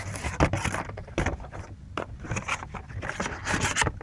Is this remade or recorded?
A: recorded